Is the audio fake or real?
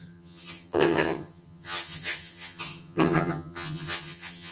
fake